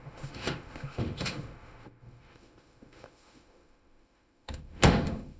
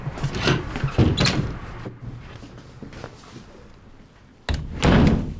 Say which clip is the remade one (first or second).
first